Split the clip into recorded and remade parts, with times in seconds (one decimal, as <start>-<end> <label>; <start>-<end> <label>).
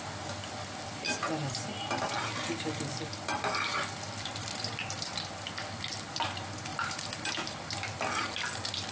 0.0-8.9 recorded